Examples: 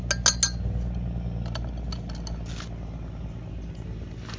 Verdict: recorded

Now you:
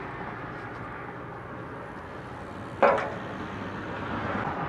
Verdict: recorded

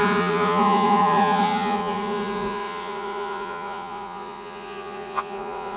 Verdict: remade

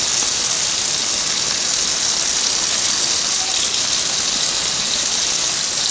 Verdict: recorded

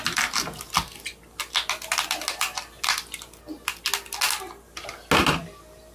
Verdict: recorded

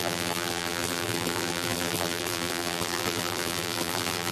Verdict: remade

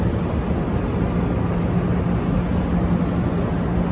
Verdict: recorded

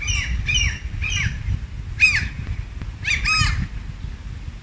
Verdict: recorded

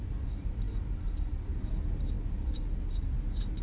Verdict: recorded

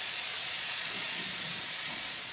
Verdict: remade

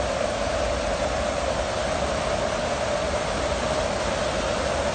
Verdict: recorded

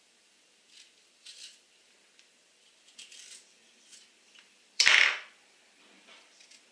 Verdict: remade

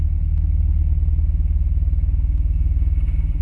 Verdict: recorded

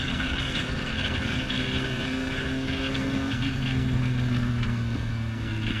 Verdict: remade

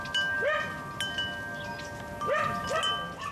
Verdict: recorded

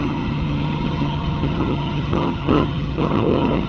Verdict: remade